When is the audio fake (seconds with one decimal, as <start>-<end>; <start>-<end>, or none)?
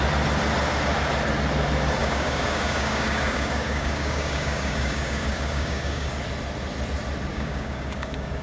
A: 2.0-6.1; 7.3-8.4